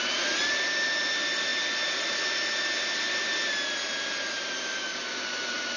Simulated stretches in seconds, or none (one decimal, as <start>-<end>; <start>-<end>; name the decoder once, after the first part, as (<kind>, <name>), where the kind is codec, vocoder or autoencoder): none